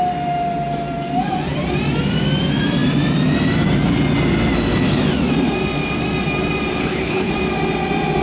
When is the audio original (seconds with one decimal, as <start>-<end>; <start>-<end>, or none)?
0.0-6.8; 7.3-8.2